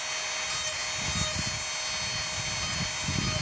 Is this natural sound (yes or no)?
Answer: yes